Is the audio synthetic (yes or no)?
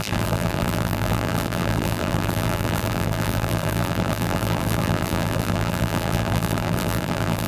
yes